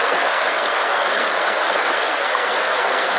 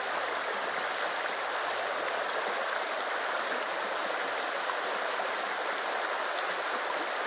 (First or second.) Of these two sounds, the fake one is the first